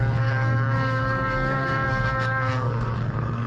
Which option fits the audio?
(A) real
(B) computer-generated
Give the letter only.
B